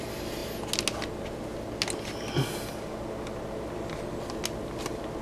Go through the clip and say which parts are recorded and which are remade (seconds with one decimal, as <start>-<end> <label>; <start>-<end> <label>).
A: 0.0-5.2 recorded